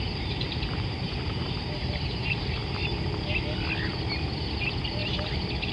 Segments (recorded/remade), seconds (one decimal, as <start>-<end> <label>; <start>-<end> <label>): 0.0-2.6 remade; 2.6-3.8 recorded; 3.8-5.0 remade; 5.0-5.7 recorded